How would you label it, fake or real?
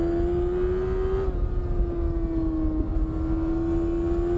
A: real